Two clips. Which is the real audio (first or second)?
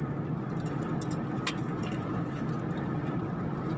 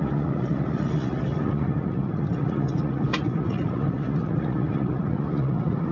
first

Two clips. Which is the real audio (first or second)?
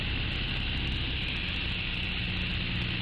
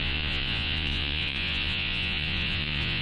first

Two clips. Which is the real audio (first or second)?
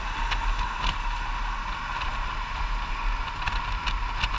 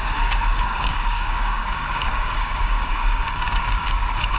first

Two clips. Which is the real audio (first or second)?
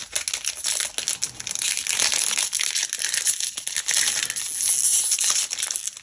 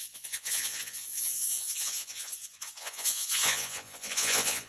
first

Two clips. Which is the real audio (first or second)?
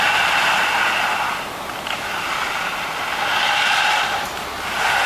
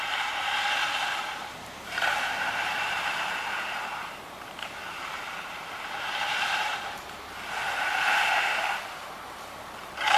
first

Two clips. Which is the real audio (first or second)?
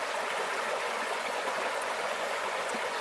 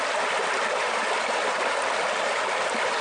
second